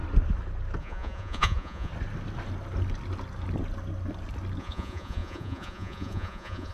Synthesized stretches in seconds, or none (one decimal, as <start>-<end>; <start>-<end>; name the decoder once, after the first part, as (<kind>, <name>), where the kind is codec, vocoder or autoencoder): 0.8-1.9 (vocoder, Vocos); 4.6-6.7